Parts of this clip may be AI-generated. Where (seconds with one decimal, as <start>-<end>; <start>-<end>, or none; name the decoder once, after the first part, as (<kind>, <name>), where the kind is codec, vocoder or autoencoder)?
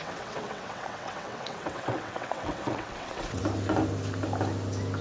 0.0-3.4 (vocoder, WaveNeXt)